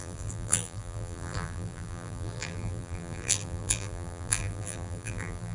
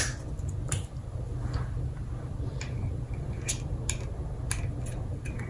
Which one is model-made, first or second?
first